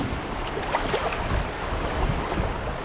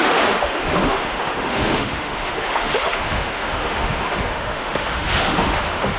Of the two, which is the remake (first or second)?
second